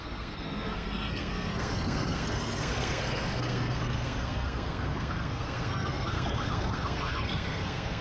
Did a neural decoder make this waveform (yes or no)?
yes